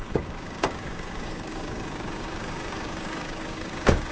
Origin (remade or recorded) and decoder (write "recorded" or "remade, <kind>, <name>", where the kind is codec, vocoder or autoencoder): remade, codec, DAC